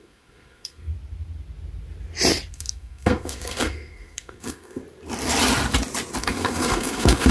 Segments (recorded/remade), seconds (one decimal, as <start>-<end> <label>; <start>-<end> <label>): 0.0-0.9 remade; 0.9-2.5 recorded; 2.5-4.8 remade; 4.8-6.2 recorded; 6.2-7.3 remade